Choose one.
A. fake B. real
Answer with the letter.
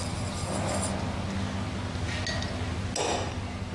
B